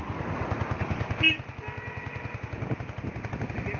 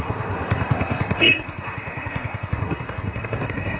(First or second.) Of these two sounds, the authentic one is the first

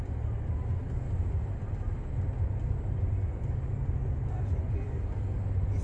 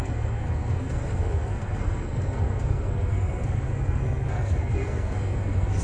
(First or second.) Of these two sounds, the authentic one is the first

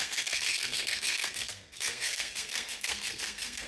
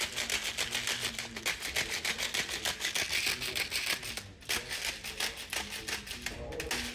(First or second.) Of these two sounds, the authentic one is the second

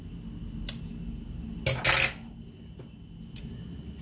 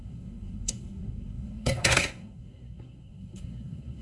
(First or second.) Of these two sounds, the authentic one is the first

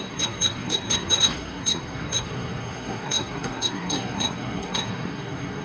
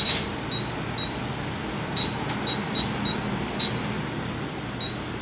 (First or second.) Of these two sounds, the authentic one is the second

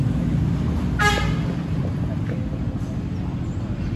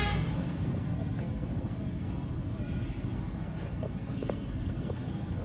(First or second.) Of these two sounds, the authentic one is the first